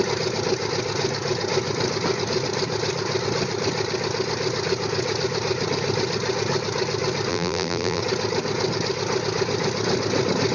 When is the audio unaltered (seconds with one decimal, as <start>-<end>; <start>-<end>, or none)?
0.0-7.3; 8.0-10.5